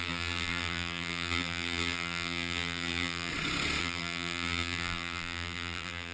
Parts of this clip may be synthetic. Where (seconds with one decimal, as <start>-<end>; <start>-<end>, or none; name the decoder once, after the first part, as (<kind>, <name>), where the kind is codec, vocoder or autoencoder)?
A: 0.0-3.3 (vocoder, BigVGAN v2); 3.8-6.1